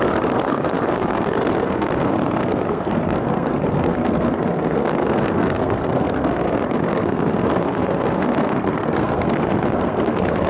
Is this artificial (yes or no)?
yes